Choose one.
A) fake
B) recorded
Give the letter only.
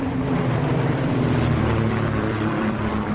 A